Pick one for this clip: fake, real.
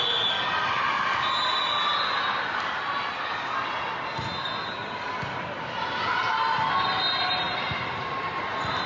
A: real